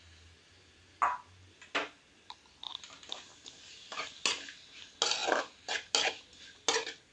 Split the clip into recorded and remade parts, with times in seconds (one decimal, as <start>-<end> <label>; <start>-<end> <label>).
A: 0.0-7.1 recorded